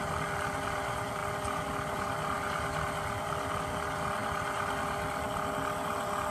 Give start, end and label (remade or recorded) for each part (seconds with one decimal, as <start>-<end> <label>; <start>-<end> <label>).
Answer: 0.0-6.3 recorded